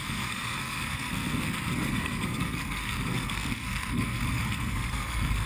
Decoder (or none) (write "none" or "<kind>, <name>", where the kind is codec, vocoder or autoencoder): codec, SNAC